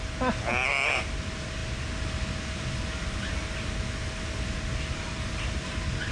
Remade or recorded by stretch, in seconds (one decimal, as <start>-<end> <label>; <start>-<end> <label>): 0.0-6.1 recorded